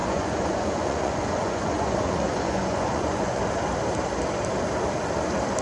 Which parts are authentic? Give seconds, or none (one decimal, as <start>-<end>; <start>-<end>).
3.4-5.6